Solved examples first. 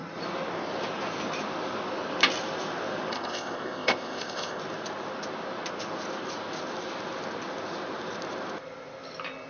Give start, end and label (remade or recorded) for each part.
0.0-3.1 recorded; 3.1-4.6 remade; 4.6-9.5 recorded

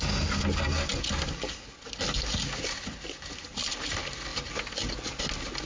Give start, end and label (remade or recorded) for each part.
0.0-5.7 recorded

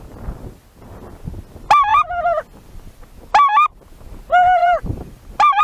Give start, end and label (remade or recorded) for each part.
0.0-1.9 recorded; 1.9-3.0 remade; 3.0-4.6 recorded; 4.6-5.6 remade

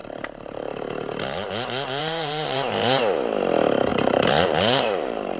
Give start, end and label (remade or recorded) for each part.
0.0-0.7 remade; 0.7-2.0 recorded; 2.0-3.0 remade; 3.0-3.9 recorded; 3.9-5.4 remade

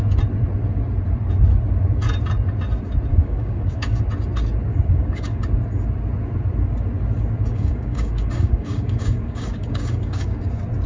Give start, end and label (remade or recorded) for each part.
0.0-3.1 recorded; 3.1-4.0 remade; 4.0-4.7 recorded; 4.7-5.4 remade; 5.4-7.5 recorded; 7.5-10.5 remade; 10.5-10.9 recorded